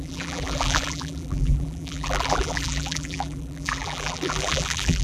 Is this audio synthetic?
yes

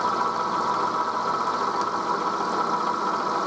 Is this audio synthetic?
no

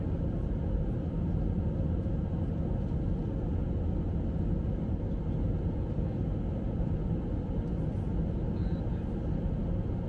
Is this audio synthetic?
no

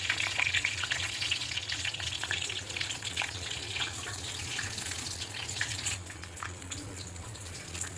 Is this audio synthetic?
yes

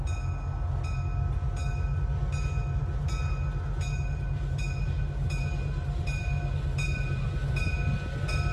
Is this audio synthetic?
no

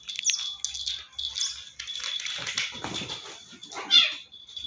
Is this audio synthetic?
no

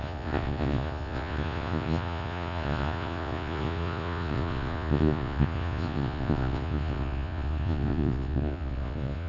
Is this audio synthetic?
yes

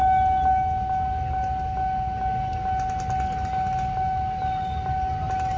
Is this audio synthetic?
no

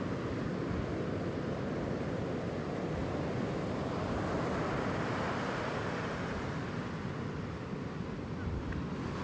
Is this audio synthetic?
no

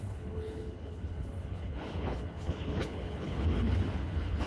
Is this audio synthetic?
yes